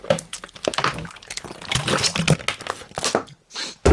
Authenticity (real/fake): real